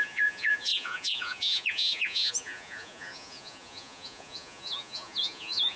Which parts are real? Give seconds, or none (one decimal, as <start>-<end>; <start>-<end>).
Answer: none